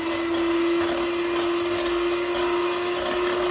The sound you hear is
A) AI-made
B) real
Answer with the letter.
B